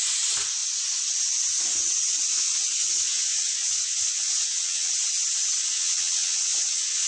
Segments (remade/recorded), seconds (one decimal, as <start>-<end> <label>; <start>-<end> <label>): 0.0-2.2 recorded; 2.2-4.9 remade; 4.9-5.6 recorded; 5.6-7.1 remade